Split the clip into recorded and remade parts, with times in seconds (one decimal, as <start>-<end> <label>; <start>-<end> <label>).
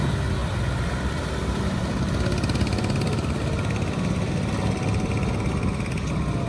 0.0-0.4 recorded; 0.4-4.3 remade; 4.3-6.5 recorded